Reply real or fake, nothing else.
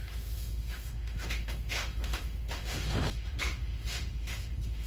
fake